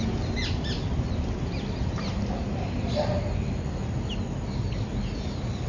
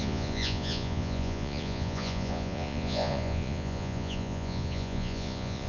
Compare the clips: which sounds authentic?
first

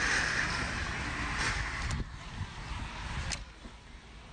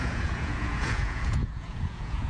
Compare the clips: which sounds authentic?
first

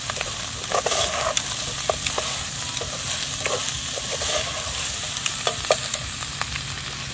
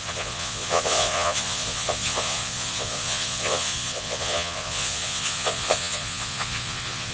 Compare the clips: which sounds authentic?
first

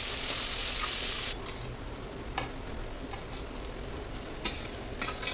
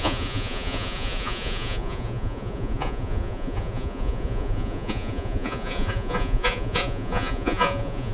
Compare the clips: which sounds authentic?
first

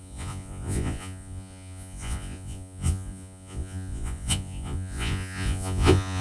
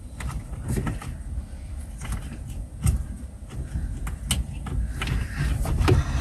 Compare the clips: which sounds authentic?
second